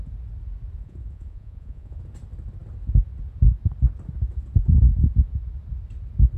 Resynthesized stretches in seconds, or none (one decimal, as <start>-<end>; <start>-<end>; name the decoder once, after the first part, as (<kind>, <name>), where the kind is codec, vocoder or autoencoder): 0.8-2.0 (vocoder, Vocos)